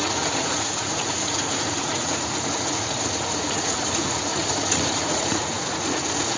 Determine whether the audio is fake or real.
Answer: fake